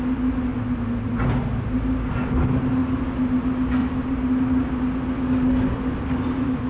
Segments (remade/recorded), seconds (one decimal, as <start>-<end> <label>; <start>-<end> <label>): 0.0-3.8 recorded; 3.8-4.4 remade; 4.4-6.7 recorded